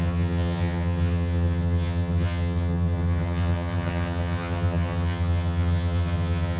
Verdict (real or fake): fake